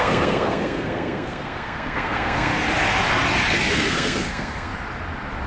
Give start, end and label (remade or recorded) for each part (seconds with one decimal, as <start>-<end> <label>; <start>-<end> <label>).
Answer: 0.0-2.5 remade; 2.5-3.7 recorded; 3.7-4.7 remade; 4.7-5.5 recorded